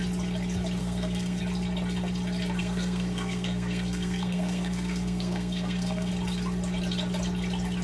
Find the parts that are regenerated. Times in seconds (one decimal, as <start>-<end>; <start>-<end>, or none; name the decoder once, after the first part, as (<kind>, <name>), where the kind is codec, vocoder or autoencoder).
0.8-1.4 (codec, SNAC); 2.6-6.1